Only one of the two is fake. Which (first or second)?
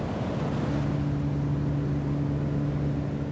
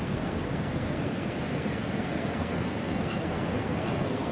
second